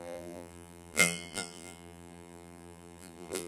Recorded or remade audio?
remade